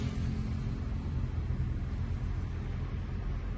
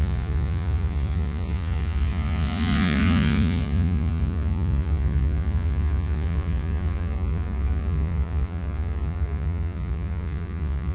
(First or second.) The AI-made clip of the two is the second